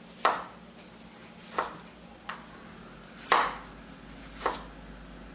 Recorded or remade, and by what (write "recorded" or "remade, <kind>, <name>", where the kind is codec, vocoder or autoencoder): recorded